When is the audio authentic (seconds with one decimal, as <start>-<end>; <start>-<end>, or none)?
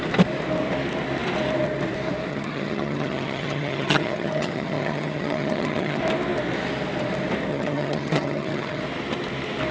0.0-2.3; 6.0-7.5; 8.8-9.7